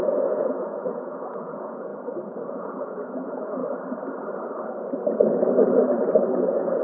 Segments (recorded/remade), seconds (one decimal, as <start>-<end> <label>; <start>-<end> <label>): 0.0-1.9 remade; 1.9-2.5 recorded; 2.5-3.6 remade; 3.6-6.3 recorded; 6.3-6.8 remade

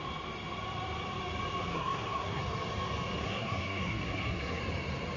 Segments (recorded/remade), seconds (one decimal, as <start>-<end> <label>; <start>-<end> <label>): 0.0-1.7 recorded; 1.7-2.4 remade; 2.4-3.2 recorded; 3.2-4.6 remade; 4.6-5.2 recorded